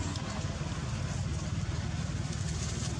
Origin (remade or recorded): recorded